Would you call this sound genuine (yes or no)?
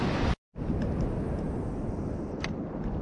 yes